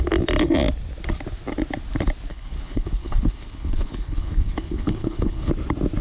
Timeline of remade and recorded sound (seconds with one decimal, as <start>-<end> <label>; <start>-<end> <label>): 0.0-2.3 recorded; 2.3-5.5 remade; 5.5-6.0 recorded